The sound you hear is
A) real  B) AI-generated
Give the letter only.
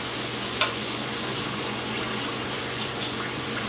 B